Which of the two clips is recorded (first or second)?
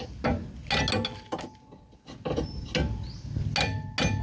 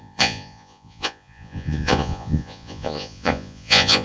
first